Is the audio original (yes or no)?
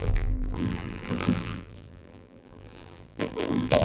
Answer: no